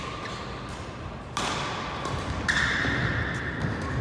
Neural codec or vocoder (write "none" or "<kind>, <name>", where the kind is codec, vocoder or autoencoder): none